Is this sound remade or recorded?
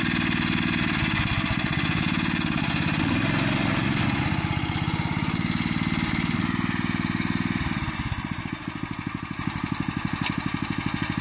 recorded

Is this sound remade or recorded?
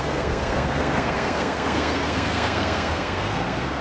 remade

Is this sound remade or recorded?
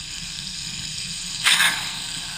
remade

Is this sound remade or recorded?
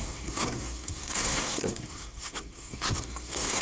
remade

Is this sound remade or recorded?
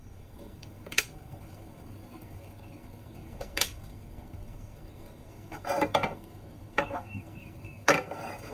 remade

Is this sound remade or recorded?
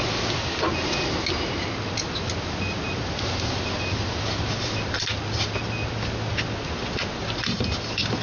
recorded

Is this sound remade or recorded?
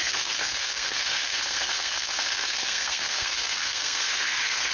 remade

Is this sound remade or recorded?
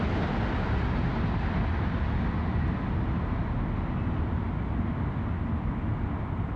recorded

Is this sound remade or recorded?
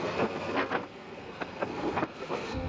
remade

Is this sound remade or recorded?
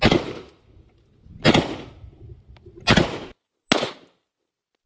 recorded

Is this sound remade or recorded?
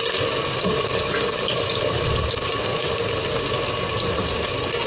recorded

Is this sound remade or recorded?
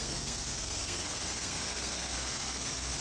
remade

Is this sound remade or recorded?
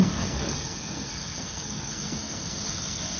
remade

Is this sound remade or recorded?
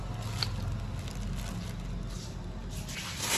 recorded